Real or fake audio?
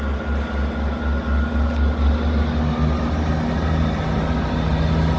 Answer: real